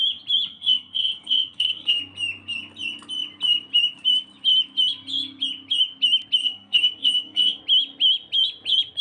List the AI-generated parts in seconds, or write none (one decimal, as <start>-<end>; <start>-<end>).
0.5-2.0; 6.4-7.6

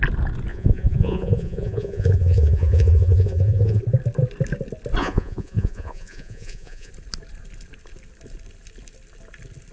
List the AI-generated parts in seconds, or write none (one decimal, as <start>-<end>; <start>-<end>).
0.5-3.8; 5.0-6.9